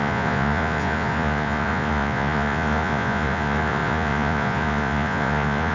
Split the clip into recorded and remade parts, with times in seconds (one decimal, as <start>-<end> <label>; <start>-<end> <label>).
0.0-5.7 remade